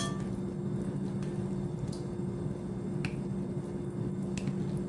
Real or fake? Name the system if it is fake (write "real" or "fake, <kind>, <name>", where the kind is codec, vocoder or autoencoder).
real